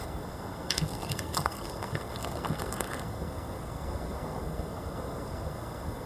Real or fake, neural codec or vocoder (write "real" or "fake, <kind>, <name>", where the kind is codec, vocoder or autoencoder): fake, codec, SNAC